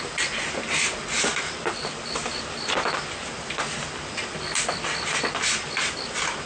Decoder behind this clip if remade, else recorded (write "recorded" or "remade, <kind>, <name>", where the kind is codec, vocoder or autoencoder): recorded